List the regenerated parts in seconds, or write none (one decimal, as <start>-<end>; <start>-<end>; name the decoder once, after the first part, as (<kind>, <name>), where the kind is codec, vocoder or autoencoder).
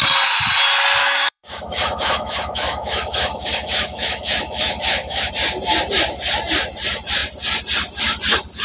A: 1.0-5.3 (autoencoder, DAC-VAE)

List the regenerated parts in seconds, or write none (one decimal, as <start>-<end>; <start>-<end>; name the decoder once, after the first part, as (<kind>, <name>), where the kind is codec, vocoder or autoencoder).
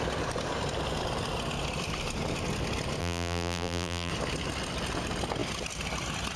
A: 3.0-4.1 (vocoder, BigVGAN v2)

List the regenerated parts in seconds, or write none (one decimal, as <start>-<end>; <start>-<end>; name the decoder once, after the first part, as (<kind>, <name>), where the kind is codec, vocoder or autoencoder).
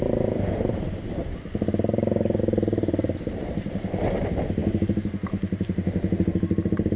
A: 0.0-1.2 (vocoder, BigVGAN v2); 2.4-7.0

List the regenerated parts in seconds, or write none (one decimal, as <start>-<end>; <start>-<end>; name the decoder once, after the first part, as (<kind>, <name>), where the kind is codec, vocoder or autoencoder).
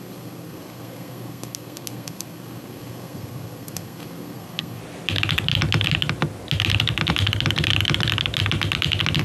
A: 0.0-4.8 (codec, SNAC)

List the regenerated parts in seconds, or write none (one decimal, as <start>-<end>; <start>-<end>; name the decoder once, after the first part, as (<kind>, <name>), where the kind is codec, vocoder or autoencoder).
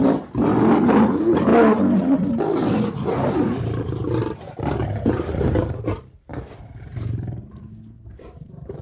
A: none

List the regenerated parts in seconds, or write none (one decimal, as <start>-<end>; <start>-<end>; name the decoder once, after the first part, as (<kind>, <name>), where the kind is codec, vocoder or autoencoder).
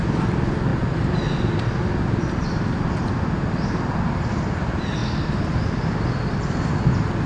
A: none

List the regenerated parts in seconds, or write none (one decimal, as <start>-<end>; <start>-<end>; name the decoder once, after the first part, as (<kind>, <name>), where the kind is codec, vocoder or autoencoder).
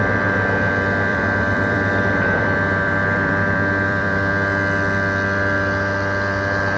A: 1.1-4.3 (vocoder, BigVGAN v2)